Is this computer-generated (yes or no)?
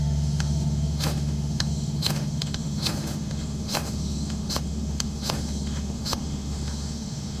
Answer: yes